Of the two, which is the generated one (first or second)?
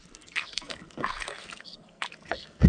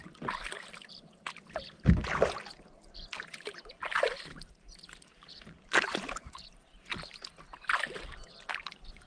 first